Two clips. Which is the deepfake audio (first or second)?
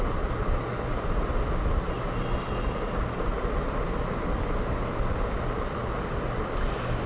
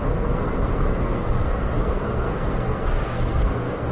second